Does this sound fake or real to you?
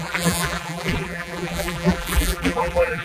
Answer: fake